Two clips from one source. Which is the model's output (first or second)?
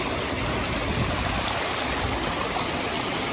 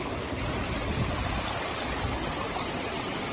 second